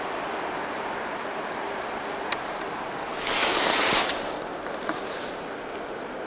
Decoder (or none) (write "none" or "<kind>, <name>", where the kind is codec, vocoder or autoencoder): none